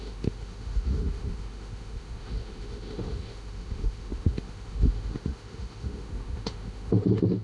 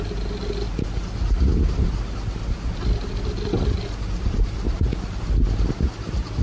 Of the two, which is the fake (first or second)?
first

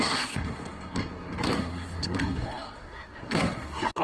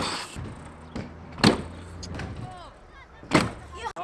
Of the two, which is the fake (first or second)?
first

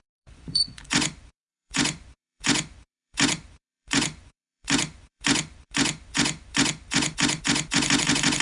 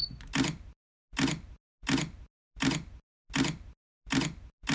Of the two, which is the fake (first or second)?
first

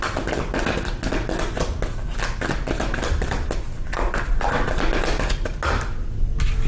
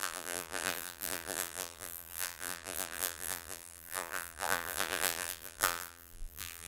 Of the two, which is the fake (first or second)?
second